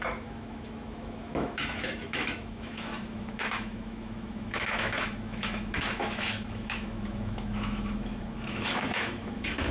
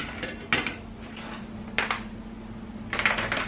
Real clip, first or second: second